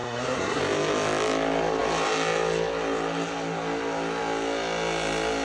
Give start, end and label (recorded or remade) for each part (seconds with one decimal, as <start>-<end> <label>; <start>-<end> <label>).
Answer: 0.0-0.6 remade; 0.6-5.4 recorded